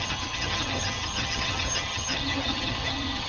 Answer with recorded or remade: remade